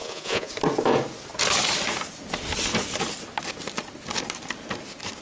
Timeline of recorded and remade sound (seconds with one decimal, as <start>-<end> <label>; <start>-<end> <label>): 0.0-0.5 remade; 0.5-5.2 recorded